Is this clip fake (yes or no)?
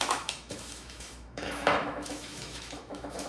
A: yes